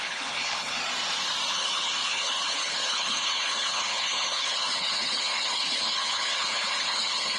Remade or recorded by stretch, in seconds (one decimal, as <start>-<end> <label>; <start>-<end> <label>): 0.0-0.8 remade; 0.8-1.5 recorded; 1.5-7.4 remade